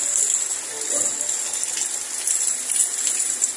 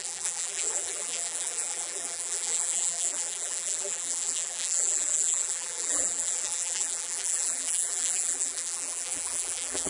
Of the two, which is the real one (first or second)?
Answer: first